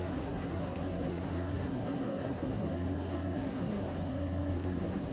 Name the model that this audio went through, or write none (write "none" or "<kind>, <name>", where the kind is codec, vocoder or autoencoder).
codec, SNAC